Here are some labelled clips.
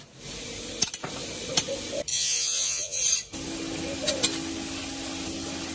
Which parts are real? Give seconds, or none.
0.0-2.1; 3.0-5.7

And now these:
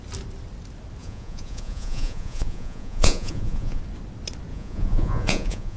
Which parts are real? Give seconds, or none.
0.0-1.0; 3.8-4.5

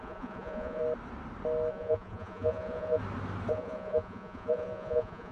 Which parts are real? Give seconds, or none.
0.8-1.7; 3.0-3.5

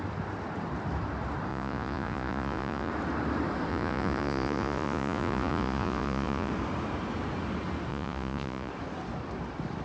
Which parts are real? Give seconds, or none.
0.0-1.5; 2.9-3.7; 6.5-7.9; 8.7-9.8

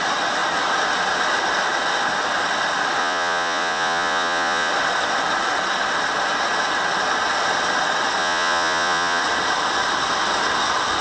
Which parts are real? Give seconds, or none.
0.0-3.0; 4.7-8.2; 9.2-11.0

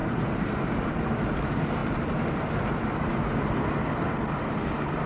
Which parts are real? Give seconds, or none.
0.0-5.1